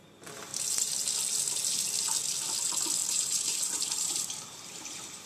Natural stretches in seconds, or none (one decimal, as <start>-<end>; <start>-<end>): 0.0-3.0